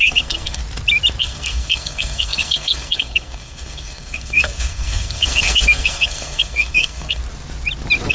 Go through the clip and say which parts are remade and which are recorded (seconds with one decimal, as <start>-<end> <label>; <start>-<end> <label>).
0.0-0.6 remade; 0.6-1.2 recorded; 1.2-7.2 remade; 7.2-8.1 recorded

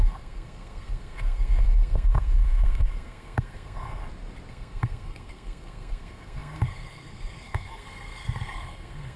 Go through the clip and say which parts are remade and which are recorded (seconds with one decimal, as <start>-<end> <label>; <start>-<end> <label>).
0.0-4.0 remade; 4.0-4.5 recorded; 4.5-9.2 remade

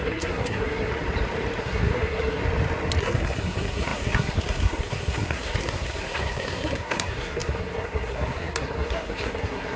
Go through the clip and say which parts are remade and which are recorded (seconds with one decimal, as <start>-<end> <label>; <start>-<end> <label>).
0.0-0.9 remade; 0.9-1.6 recorded; 1.6-2.4 remade; 2.4-3.0 recorded; 3.0-9.8 remade